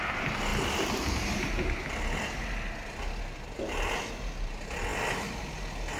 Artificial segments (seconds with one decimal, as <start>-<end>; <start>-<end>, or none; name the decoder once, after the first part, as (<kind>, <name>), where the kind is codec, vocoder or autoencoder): none